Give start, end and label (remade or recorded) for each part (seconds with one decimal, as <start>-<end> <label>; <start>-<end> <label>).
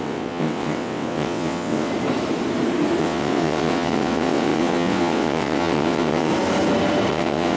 0.0-1.9 remade; 1.9-3.0 recorded; 3.0-6.3 remade; 6.3-7.1 recorded; 7.1-7.6 remade